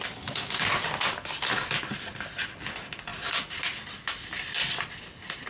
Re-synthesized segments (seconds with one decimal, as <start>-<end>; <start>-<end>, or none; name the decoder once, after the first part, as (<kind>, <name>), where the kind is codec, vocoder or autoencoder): none